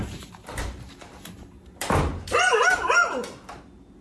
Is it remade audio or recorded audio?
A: remade